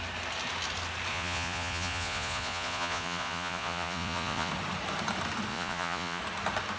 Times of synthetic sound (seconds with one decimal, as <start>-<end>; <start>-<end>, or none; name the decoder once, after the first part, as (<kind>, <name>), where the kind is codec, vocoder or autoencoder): 1.1-4.5 (vocoder, Vocos); 5.5-6.2